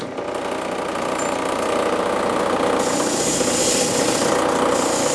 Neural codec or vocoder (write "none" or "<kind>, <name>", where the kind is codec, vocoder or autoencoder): none